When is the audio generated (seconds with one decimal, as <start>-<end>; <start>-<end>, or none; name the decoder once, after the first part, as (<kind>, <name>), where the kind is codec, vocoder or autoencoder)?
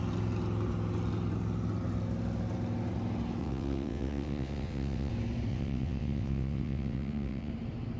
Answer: 3.4-5.1 (vocoder, WaveNeXt); 5.5-7.5